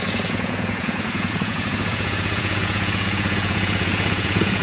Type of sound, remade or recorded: remade